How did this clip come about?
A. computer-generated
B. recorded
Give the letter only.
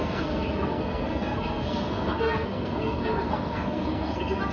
A